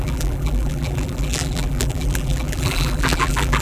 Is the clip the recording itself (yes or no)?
no